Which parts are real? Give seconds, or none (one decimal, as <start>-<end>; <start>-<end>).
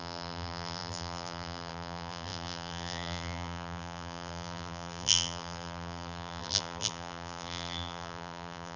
none